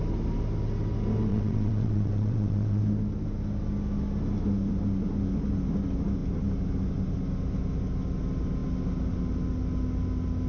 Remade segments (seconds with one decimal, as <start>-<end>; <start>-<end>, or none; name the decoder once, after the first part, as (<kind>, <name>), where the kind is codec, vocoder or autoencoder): 1.3-2.8 (vocoder, WaveNeXt)

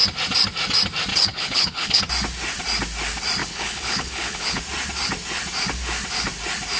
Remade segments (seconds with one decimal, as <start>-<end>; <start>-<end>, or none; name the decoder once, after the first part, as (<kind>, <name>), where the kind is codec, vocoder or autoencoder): 1.1-2.0 (codec, HILCodec); 3.4-4.6

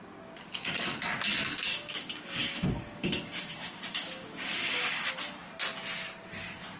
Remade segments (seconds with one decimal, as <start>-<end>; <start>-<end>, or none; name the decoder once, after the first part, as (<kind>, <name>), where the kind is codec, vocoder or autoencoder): 1.7-5.1 (codec, DAC)

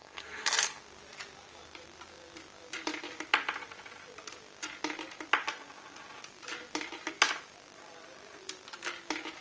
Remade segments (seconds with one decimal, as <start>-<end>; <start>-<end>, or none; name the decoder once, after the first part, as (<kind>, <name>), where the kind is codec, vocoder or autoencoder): 0.0-0.8 (codec, SNAC)